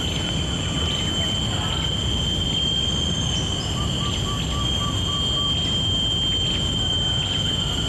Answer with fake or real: real